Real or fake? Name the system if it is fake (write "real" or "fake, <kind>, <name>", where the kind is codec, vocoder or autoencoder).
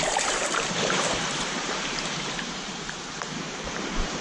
fake, vocoder, BigVGAN v2